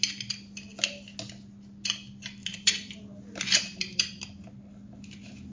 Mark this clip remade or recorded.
recorded